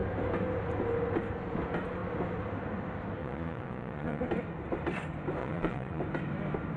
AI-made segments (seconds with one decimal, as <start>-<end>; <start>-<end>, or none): 3.2-4.2; 5.4-6.0